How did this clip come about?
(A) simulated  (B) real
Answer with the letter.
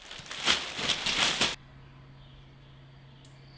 B